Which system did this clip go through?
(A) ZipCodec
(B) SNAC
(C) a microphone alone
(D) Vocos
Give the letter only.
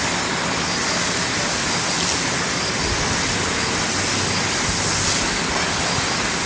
C